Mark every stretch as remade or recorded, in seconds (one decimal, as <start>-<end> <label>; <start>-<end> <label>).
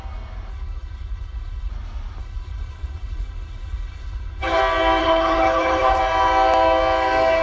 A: 0.0-0.5 recorded; 0.5-1.7 remade; 1.7-2.2 recorded; 2.2-4.6 remade; 4.6-5.0 recorded; 5.0-6.0 remade; 6.0-7.4 recorded